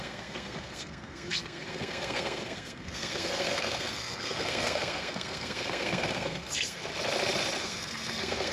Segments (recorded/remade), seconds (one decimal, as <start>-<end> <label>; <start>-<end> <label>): 0.0-6.9 remade; 6.9-7.6 recorded; 7.6-8.5 remade